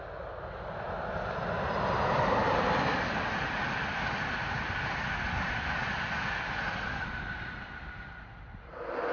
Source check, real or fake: real